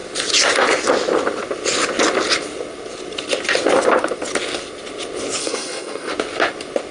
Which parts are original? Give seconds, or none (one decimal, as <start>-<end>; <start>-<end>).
0.0-5.4; 6.1-6.9